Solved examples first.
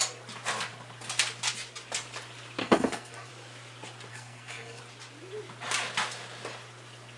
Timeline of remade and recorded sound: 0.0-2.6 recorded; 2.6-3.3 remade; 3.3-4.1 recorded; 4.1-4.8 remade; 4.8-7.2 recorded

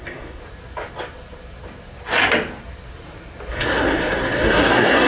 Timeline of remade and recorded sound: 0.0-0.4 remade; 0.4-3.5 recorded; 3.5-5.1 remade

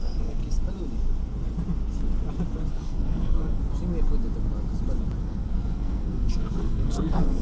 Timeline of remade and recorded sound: 0.0-0.4 remade; 0.4-2.7 recorded; 2.7-3.6 remade; 3.6-5.2 recorded; 5.2-7.4 remade

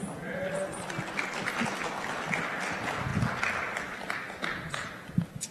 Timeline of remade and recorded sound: 0.0-5.5 recorded

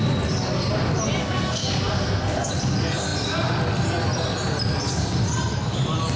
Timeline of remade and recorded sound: 0.0-1.2 recorded; 1.2-2.5 remade; 2.5-6.2 recorded

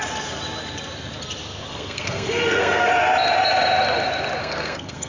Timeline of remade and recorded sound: 0.0-1.7 recorded; 1.7-2.9 remade; 2.9-4.4 recorded; 4.4-5.1 remade

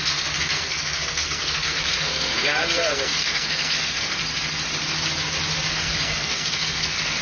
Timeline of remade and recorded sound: 0.0-4.2 remade; 4.2-5.7 recorded; 5.7-7.2 remade